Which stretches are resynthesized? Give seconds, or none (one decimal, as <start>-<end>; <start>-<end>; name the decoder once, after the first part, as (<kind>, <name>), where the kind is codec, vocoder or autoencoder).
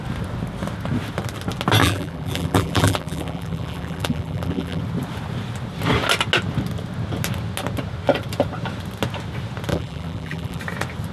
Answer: 1.8-4.8 (vocoder, BigVGAN v2); 9.7-10.6